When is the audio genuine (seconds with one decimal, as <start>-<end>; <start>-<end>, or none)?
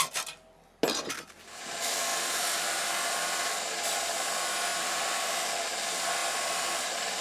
0.0-4.7; 5.3-7.2